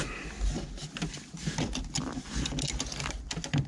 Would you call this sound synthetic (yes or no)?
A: no